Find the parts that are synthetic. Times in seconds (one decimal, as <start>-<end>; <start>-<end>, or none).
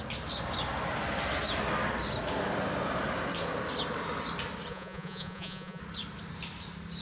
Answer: 4.7-5.8